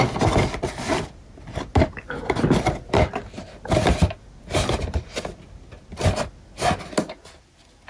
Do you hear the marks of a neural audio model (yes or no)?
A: no